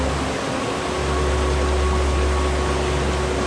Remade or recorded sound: recorded